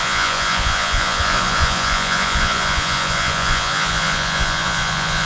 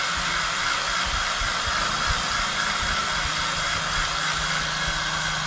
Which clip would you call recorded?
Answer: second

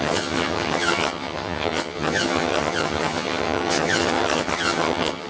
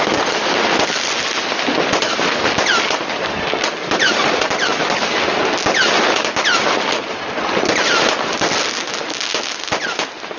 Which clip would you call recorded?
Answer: second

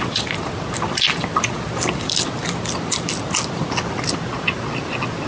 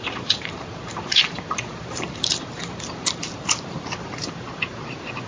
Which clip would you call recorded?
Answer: first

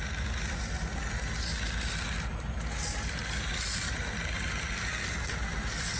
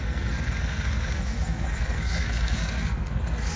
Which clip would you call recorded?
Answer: first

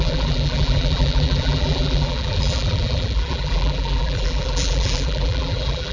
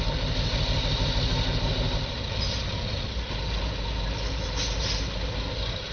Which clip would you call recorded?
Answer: second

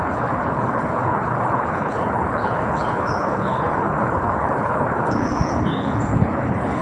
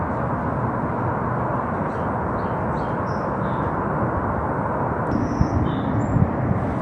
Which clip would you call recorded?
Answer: second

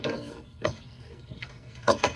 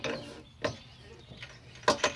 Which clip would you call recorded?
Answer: second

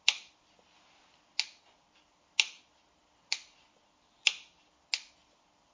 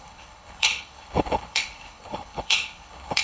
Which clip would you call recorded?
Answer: first